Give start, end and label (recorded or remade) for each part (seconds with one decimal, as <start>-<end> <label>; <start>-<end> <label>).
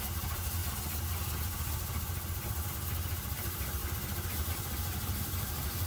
0.0-0.6 remade; 0.6-2.7 recorded; 2.7-3.8 remade; 3.8-4.5 recorded; 4.5-5.9 remade